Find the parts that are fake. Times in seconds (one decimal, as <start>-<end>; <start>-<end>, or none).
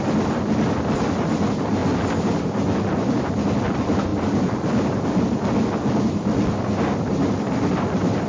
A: none